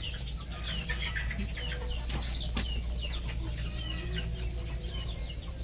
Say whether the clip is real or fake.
real